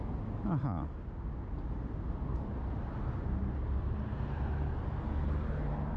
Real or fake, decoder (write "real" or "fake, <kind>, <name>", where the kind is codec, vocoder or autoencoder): real